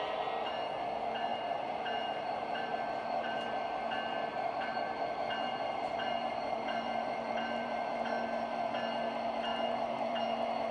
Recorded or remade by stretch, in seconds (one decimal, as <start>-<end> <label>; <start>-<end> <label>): 0.0-1.3 recorded; 1.3-3.5 remade; 3.5-4.3 recorded; 4.3-7.9 remade; 7.9-9.5 recorded; 9.5-10.2 remade; 10.2-10.7 recorded